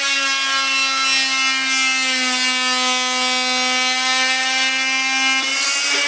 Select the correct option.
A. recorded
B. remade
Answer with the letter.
A